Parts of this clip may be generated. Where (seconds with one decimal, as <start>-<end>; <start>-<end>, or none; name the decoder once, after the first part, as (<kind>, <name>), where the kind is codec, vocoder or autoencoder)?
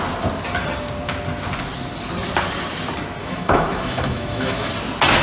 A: 3.2-4.7 (autoencoder, DAC-VAE)